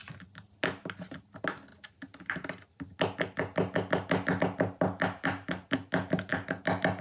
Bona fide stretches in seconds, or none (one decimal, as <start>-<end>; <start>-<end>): 0.0-7.0